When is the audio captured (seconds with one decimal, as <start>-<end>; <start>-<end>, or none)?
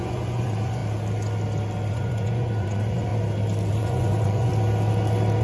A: 0.8-1.9; 3.1-3.7; 4.5-5.4